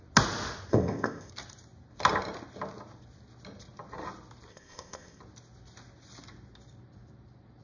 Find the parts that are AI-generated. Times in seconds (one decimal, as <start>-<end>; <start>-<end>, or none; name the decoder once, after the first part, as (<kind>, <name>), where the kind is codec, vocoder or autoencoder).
0.7-1.3 (codec, ZipCodec); 4.5-5.2